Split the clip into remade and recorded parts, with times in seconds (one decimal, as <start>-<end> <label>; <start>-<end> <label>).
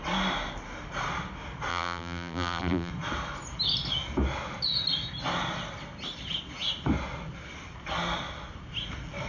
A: 0.0-1.7 recorded; 1.7-2.9 remade; 2.9-9.3 recorded